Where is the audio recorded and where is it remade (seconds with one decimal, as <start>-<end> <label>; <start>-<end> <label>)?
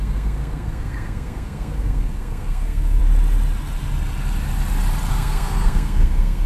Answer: 0.0-3.0 remade; 3.0-5.1 recorded; 5.1-6.5 remade